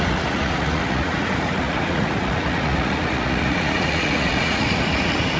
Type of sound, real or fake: fake